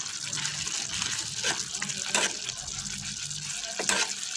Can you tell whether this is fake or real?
real